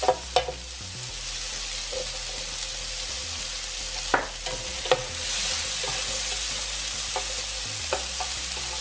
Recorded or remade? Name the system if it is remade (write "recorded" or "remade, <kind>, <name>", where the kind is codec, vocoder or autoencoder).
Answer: recorded